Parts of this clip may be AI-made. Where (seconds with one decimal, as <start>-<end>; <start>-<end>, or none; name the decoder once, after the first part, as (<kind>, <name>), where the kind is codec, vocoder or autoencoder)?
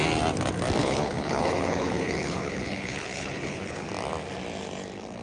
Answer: 0.8-3.9 (codec, HILCodec)